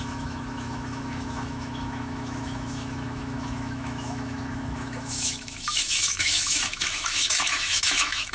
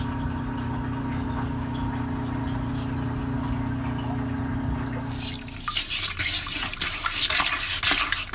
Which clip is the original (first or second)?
second